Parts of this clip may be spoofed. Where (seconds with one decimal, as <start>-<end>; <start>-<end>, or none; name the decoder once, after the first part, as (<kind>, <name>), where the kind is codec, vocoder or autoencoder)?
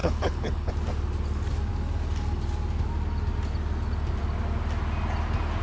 0.0-0.7 (codec, HILCodec)